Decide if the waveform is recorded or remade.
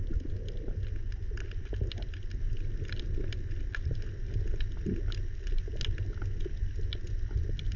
recorded